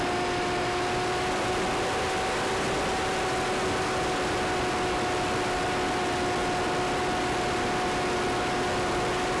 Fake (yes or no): no